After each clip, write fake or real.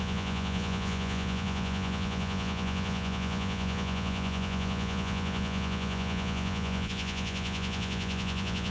fake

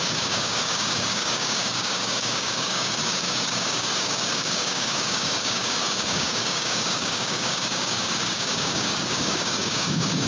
fake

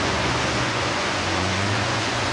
fake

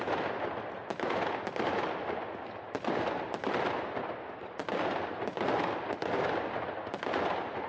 real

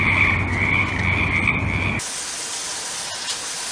real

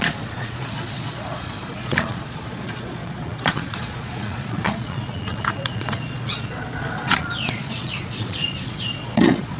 fake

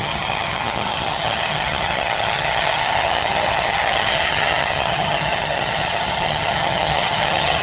fake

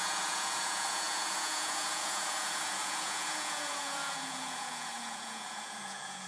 fake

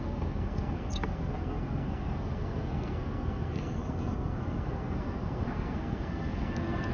fake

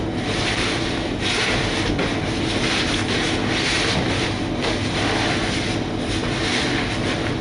real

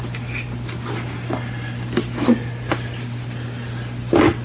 real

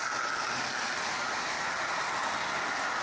real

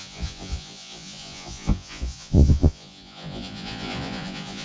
fake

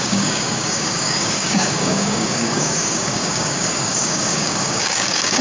fake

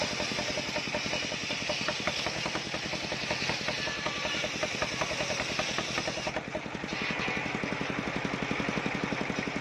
real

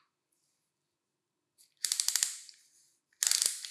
real